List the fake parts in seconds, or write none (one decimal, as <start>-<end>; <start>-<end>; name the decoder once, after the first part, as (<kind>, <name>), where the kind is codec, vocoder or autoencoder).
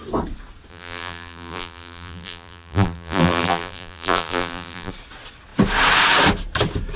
0.7-4.9 (vocoder, BigVGAN v2)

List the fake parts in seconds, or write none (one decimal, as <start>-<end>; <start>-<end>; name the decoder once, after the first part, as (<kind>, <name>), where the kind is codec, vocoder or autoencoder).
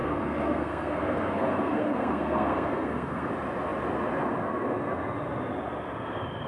0.0-3.3 (codec, SNAC)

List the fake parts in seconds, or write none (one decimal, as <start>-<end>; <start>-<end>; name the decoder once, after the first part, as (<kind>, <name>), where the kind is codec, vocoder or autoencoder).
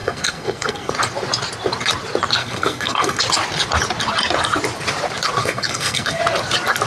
0.0-0.9 (codec, SNAC); 2.4-3.2; 5.4-6.2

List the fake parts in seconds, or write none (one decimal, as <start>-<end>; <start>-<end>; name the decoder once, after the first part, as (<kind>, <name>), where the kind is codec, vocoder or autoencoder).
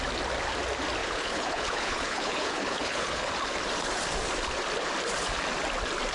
1.0-3.3 (codec, HILCodec)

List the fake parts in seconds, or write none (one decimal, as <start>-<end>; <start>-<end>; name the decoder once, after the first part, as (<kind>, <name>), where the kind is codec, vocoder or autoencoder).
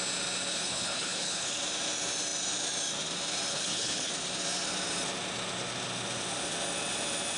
0.5-1.5 (codec, HILCodec); 3.5-4.1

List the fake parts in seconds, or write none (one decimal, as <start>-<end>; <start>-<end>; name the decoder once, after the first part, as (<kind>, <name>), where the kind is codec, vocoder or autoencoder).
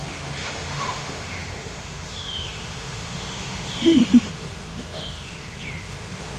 0.0-6.4 (autoencoder, DAC-VAE)